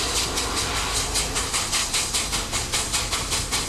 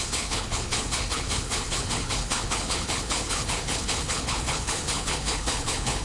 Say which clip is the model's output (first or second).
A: second